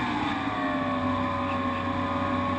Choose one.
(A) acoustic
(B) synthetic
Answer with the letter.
A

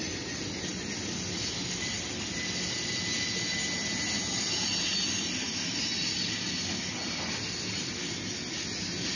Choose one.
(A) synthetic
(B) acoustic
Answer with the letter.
B